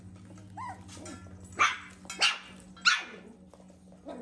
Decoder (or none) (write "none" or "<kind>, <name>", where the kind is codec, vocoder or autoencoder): none